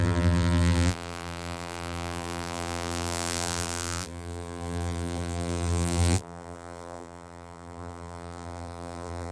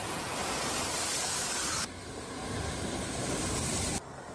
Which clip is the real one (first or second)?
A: second